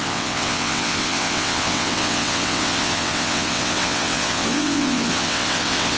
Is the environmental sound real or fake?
fake